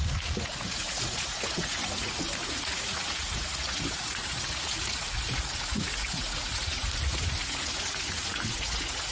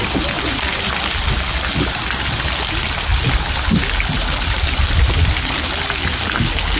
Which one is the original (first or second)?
second